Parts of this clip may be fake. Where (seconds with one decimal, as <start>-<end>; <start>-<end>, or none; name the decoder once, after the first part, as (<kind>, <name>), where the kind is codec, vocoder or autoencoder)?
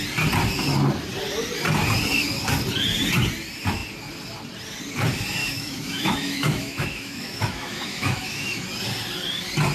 5.4-8.7 (autoencoder, DAC-VAE)